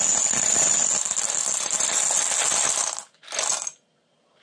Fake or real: real